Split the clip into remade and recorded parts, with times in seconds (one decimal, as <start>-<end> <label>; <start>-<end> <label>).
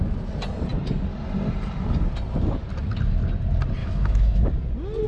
0.0-3.8 recorded; 3.8-4.4 remade; 4.4-5.1 recorded